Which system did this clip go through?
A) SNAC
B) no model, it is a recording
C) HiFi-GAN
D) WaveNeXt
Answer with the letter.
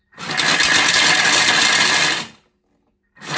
B